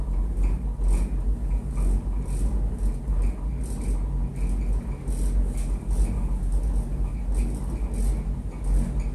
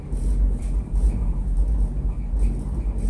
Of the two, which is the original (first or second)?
first